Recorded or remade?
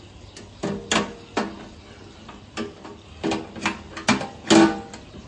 recorded